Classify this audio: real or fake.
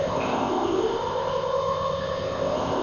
fake